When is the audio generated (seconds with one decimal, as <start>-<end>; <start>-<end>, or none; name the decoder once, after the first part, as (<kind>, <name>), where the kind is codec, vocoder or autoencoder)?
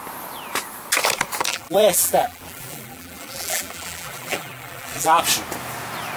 1.5-5.2 (vocoder, BigVGAN v2)